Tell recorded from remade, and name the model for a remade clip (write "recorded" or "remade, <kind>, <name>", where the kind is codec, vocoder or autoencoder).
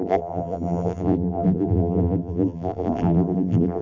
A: remade, vocoder, BigVGAN v2